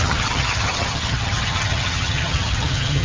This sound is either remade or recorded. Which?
remade